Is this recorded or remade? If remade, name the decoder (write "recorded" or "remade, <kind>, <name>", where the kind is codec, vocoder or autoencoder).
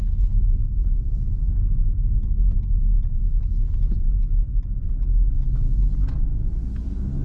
recorded